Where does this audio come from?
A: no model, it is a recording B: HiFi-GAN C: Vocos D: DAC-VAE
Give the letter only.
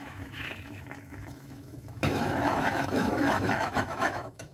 D